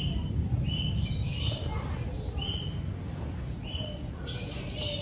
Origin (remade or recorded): recorded